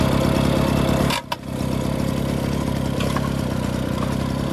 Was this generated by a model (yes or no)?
no